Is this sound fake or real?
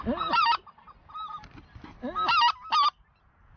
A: real